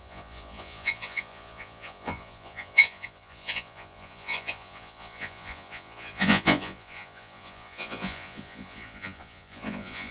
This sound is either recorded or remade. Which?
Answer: remade